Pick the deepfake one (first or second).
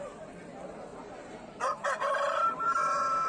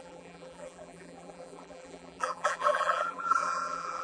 second